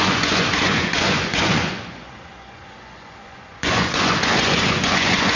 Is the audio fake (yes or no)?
yes